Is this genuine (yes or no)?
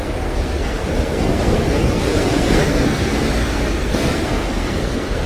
no